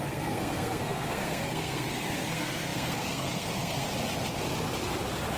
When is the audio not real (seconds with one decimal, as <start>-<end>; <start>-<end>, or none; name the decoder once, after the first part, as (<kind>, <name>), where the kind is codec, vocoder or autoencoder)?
0.0-3.9 (codec, SNAC)

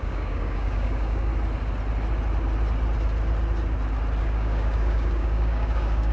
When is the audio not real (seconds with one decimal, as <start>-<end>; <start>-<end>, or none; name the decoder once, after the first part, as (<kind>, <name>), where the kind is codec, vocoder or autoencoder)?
0.0-1.3 (codec, DAC); 4.2-6.1

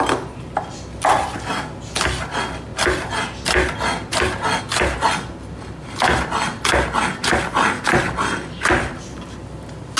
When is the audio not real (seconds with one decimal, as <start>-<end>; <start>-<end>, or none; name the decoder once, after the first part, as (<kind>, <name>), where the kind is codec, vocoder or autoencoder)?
none